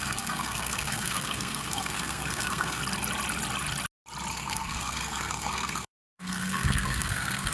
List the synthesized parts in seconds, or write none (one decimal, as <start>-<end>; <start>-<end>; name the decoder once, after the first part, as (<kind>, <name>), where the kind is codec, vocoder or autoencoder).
0.0-2.8 (codec, SNAC); 4.3-7.5